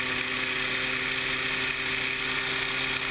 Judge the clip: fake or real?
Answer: real